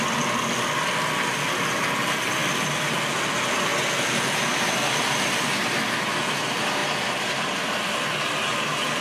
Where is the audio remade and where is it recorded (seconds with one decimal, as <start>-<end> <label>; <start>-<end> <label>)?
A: 0.0-9.0 recorded